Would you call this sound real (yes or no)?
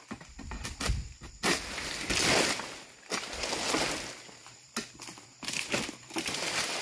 yes